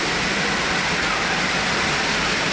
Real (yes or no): yes